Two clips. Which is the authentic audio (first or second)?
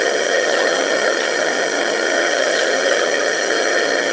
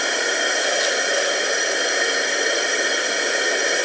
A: second